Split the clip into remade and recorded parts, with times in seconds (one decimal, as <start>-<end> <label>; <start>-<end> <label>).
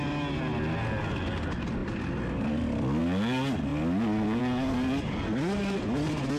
0.0-6.4 recorded